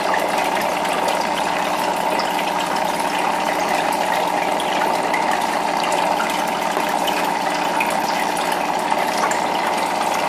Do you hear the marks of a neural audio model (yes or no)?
no